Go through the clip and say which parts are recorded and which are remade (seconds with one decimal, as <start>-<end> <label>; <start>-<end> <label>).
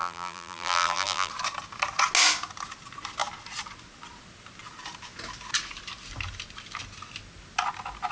0.0-1.3 remade; 1.3-8.1 recorded